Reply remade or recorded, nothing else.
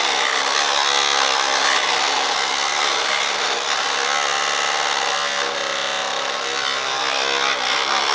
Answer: recorded